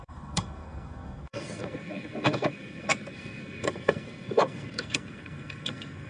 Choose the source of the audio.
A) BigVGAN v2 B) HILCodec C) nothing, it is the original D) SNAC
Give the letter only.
D